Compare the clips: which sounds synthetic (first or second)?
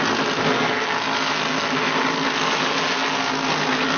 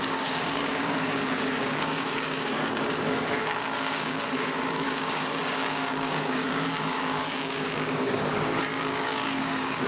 second